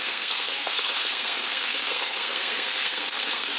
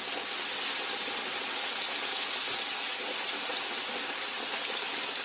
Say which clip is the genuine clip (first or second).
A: second